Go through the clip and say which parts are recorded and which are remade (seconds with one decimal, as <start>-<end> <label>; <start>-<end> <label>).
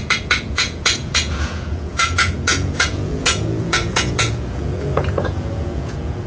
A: 0.0-6.3 remade